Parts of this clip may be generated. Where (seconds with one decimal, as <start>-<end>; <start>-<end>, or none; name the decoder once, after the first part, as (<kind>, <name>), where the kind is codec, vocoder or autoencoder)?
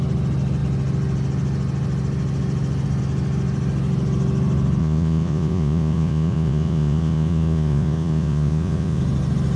4.8-9.0 (vocoder, Vocos)